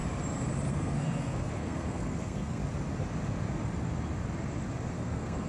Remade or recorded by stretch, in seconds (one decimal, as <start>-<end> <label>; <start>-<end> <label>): 0.0-0.7 recorded; 0.7-2.6 remade; 2.6-4.9 recorded; 4.9-5.5 remade